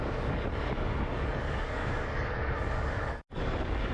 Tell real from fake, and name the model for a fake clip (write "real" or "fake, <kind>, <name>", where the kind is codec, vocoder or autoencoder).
fake, codec, DAC